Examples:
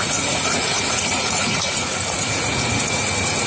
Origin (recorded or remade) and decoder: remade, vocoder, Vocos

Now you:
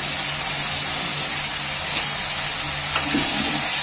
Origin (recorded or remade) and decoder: recorded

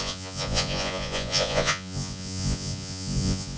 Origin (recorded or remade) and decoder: remade, vocoder, Vocos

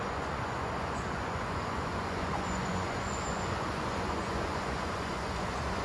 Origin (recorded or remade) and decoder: remade, vocoder, Vocos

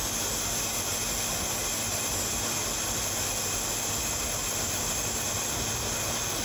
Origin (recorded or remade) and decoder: recorded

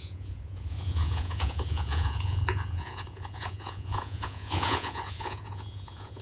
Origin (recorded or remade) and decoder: remade, vocoder, Vocos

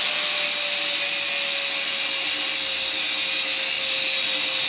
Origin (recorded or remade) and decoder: recorded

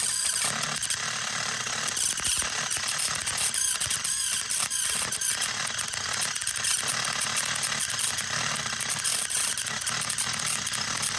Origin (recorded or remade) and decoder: recorded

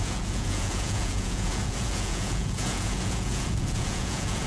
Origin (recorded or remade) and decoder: remade, vocoder, Vocos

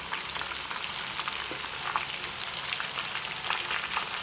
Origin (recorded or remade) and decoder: recorded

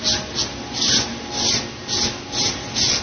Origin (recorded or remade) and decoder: recorded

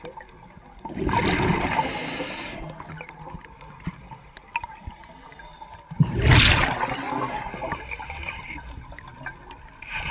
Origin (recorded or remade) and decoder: recorded